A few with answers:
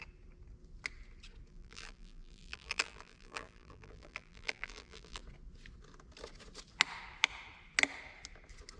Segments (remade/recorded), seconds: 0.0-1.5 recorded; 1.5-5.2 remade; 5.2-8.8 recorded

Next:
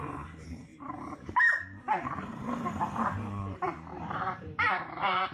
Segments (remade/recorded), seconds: 0.0-5.3 remade

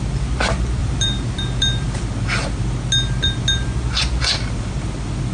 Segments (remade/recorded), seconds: 0.0-0.8 recorded; 0.8-2.0 remade; 2.0-5.3 recorded